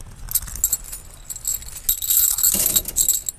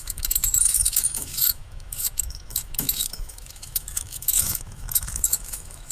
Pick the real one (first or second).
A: first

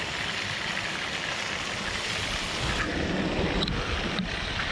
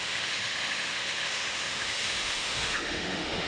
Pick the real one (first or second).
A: first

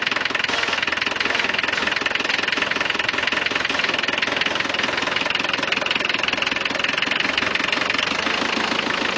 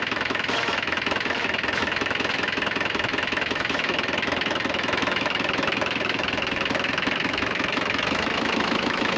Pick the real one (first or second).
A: first